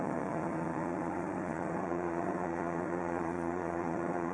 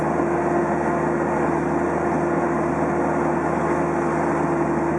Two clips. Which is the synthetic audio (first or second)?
first